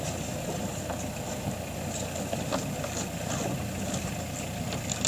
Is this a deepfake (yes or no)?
no